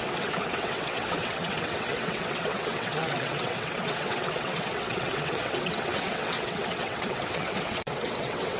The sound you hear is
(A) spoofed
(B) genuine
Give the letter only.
A